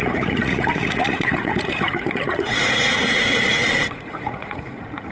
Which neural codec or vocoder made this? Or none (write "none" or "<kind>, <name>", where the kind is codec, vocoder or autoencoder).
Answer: vocoder, Vocos